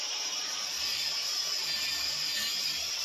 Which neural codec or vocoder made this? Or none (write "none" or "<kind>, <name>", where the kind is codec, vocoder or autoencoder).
vocoder, BigVGAN v2